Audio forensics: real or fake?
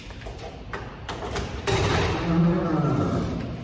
real